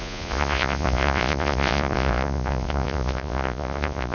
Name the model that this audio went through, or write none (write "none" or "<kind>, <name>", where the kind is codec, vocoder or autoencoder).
vocoder, Vocos